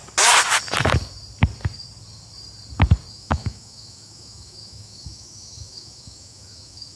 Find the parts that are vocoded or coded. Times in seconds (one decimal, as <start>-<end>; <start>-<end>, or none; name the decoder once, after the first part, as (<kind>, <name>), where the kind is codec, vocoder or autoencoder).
3.1-7.0 (autoencoder, DAC-VAE)